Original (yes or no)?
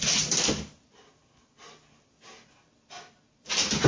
yes